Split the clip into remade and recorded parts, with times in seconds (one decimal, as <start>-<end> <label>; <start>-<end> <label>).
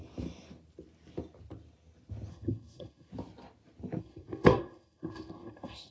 0.0-2.3 recorded; 2.3-3.1 remade; 3.1-4.0 recorded; 4.0-5.9 remade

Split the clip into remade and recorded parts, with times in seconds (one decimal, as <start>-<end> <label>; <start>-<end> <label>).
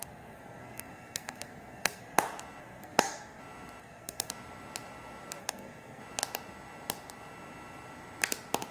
0.0-2.2 remade; 2.2-2.6 recorded; 2.6-3.4 remade; 3.4-3.8 recorded; 3.8-4.3 remade; 4.3-5.4 recorded; 5.4-6.0 remade; 6.0-8.7 recorded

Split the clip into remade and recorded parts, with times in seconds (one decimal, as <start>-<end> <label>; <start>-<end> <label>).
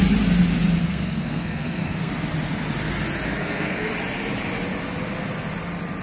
0.0-0.8 recorded; 0.8-2.1 remade; 2.1-3.4 recorded; 3.4-3.9 remade; 3.9-6.0 recorded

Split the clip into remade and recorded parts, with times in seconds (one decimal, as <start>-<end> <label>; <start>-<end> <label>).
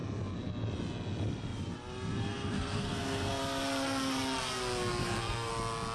0.0-2.3 recorded; 2.3-3.4 remade; 3.4-5.0 recorded; 5.0-5.5 remade; 5.5-5.9 recorded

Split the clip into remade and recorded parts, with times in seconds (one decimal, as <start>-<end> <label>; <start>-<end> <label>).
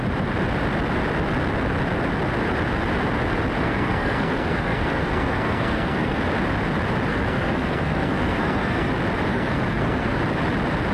0.0-3.6 recorded; 3.6-6.2 remade; 6.2-7.1 recorded; 7.1-8.9 remade; 8.9-9.3 recorded; 9.3-10.2 remade; 10.2-10.9 recorded